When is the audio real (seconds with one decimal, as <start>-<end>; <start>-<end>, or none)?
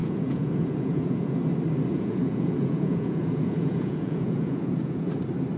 1.4-1.9; 5.1-5.6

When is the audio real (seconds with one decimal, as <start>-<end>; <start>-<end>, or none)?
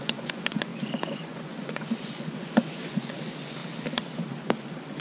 3.6-4.3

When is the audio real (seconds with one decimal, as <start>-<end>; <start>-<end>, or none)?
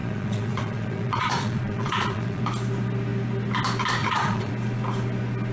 2.4-4.0; 4.5-5.5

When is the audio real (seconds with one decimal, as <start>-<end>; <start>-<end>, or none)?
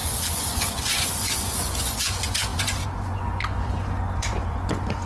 none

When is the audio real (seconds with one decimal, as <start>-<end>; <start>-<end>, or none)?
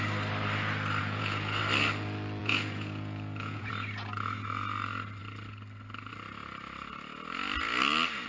0.0-1.0; 1.6-2.4; 3.7-8.3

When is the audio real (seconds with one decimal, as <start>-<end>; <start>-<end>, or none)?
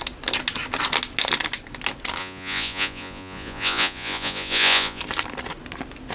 0.0-2.2; 5.0-6.1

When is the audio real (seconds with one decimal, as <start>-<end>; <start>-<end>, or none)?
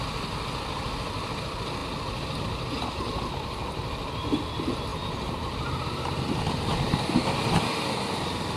0.0-8.6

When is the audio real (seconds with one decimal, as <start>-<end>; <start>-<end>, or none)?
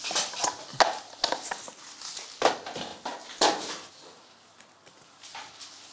0.0-5.9